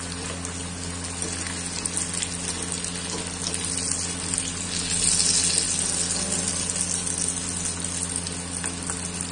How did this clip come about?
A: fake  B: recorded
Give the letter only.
B